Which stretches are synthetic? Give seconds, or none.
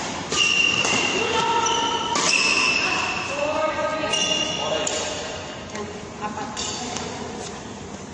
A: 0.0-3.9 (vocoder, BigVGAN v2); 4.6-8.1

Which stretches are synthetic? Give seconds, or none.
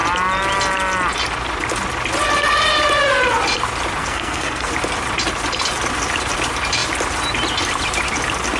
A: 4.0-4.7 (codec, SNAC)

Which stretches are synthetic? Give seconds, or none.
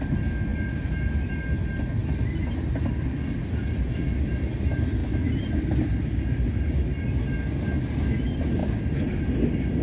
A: none